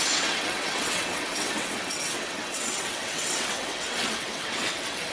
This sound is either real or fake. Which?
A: fake